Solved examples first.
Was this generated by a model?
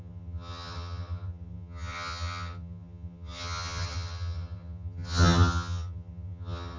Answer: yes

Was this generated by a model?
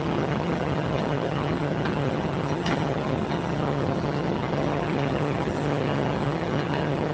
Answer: yes